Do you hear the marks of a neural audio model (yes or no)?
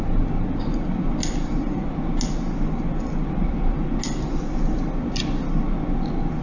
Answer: no